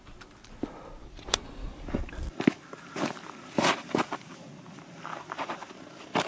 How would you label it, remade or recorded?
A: recorded